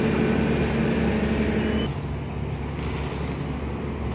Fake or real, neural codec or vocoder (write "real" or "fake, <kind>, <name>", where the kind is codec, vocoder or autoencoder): real